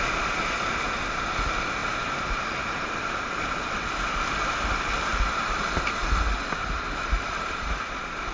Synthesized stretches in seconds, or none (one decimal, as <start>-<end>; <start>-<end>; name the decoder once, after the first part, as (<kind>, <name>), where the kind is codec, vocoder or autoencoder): 1.8-2.4 (vocoder, BigVGAN v2); 5.1-5.7; 6.6-7.8